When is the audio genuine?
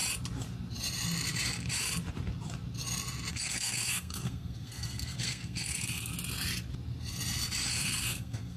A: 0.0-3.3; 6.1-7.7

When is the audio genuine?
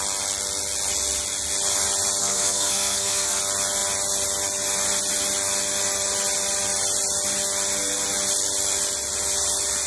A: 0.0-2.2; 3.4-9.9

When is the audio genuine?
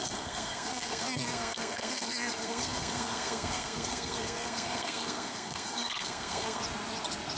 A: 6.6-7.4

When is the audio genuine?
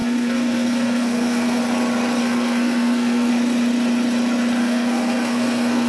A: 1.6-2.2; 3.3-4.6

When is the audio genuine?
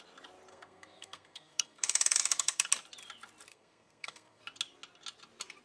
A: 0.0-0.5; 2.7-3.5; 4.4-5.6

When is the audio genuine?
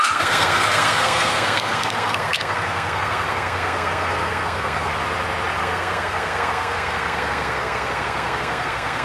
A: 4.9-5.6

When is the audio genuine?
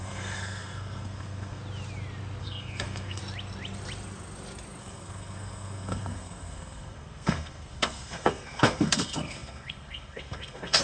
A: 1.6-2.4; 3.2-4.8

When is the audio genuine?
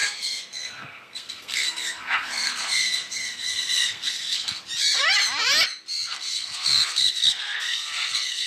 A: 4.6-6.1